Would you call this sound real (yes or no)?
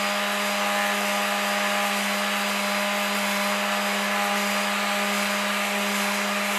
yes